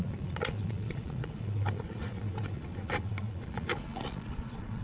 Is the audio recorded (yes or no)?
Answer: no